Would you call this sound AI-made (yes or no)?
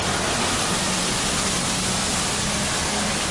no